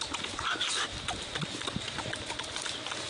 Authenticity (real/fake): real